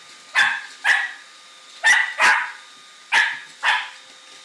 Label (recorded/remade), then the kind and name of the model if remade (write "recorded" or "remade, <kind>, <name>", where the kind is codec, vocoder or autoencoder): recorded